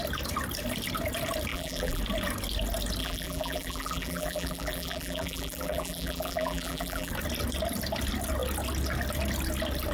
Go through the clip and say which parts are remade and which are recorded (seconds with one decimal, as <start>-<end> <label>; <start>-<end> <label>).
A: 0.0-1.5 recorded; 1.5-2.0 remade; 2.0-3.0 recorded; 3.0-7.1 remade; 7.1-9.9 recorded